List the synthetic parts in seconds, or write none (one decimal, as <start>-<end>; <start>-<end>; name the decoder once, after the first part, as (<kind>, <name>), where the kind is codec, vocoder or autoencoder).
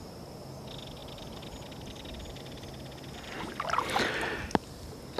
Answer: none